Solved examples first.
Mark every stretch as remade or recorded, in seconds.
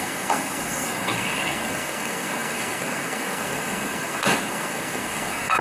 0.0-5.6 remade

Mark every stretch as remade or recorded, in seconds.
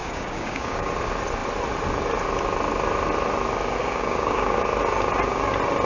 0.0-0.9 remade; 0.9-3.8 recorded; 3.8-4.6 remade; 4.6-5.9 recorded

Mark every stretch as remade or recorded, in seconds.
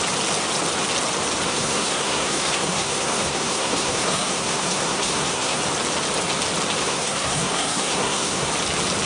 0.0-1.5 recorded; 1.5-5.6 remade; 5.6-6.8 recorded; 6.8-8.5 remade; 8.5-9.1 recorded